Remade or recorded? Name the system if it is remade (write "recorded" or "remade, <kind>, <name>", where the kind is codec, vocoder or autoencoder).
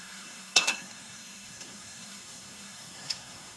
remade, codec, SNAC